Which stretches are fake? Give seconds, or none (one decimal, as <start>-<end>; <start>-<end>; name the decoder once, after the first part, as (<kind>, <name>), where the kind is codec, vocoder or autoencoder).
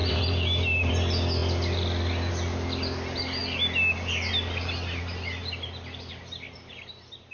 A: 0.0-0.9 (vocoder, BigVGAN v2)